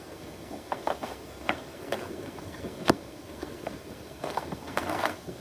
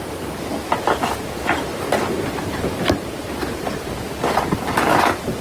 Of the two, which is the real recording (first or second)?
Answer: second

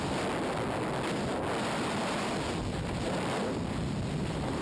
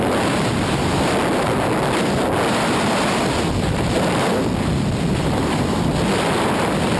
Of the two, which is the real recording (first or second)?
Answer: first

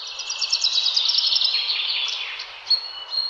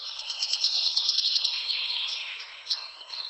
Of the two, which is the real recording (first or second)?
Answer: first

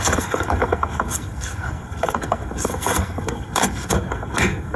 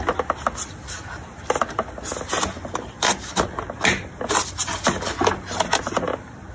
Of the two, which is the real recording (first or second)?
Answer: second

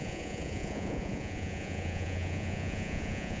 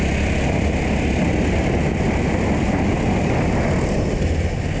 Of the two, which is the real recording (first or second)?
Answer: second